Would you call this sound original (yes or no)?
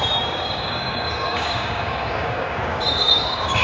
no